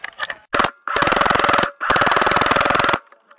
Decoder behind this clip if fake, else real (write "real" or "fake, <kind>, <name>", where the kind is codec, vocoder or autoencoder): real